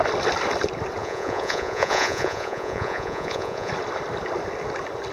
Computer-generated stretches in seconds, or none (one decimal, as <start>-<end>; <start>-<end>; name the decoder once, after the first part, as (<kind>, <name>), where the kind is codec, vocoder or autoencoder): 1.0-3.7 (vocoder, Vocos)